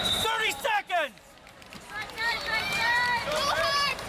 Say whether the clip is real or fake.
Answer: fake